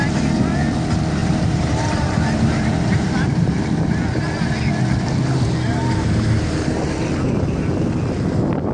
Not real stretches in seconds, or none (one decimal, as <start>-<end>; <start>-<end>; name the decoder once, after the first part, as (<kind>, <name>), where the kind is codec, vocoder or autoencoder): 1.2-3.6 (vocoder, BigVGAN v2)